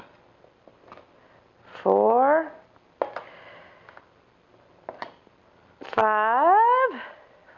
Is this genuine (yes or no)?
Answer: yes